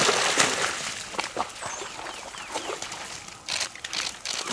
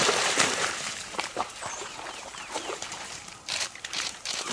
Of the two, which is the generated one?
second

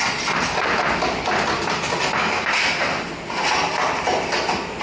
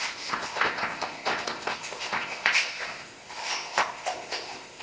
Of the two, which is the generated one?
second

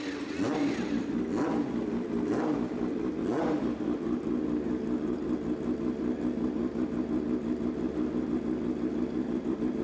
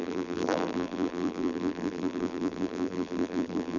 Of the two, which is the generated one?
second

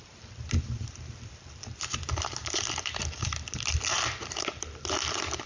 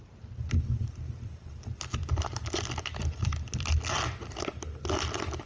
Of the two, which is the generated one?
first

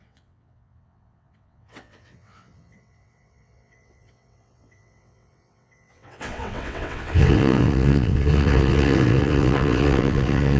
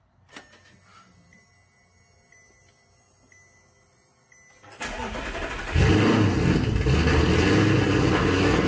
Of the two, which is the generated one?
first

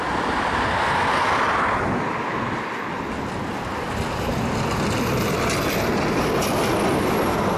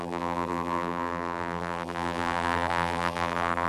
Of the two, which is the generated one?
second